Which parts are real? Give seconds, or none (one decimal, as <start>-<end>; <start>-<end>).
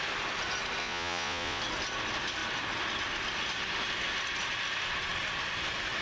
0.0-0.8; 1.6-6.0